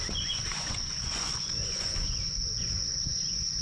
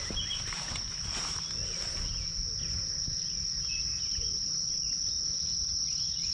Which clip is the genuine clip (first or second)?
second